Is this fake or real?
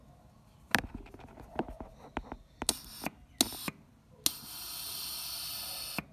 real